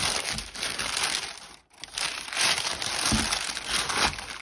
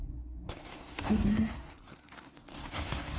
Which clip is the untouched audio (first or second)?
first